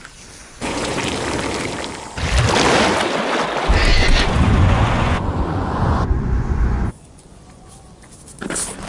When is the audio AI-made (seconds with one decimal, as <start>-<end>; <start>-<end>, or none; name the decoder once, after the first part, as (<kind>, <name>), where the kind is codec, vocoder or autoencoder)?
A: 0.4-1.0 (vocoder, Vocos); 3.9-8.1